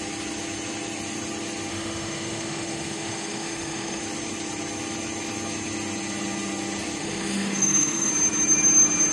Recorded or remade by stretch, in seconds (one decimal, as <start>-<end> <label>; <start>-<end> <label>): 0.0-1.7 recorded; 1.7-4.0 remade; 4.0-7.0 recorded; 7.0-8.1 remade; 8.1-9.1 recorded